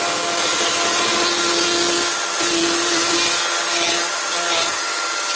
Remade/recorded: recorded